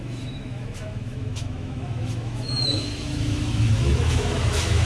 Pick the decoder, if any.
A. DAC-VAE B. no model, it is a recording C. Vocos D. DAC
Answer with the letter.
A